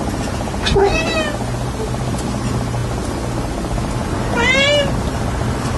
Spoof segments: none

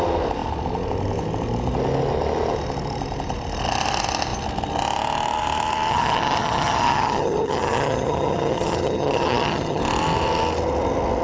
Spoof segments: 5.9-9.8 (vocoder, HiFi-GAN)